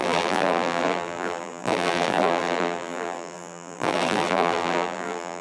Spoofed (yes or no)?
yes